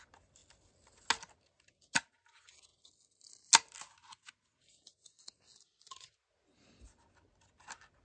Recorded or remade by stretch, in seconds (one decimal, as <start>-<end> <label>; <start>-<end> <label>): 0.0-8.0 recorded